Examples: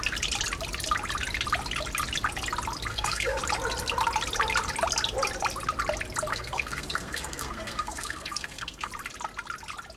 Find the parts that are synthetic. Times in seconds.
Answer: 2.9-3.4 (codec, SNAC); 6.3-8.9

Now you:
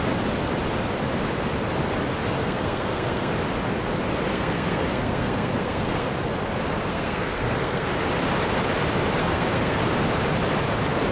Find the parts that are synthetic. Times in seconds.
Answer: 2.4-3.3 (codec, SNAC); 4.3-6.1; 6.9-7.9; 9.2-9.8